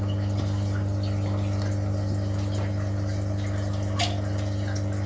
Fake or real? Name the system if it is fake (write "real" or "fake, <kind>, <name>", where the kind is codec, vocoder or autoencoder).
real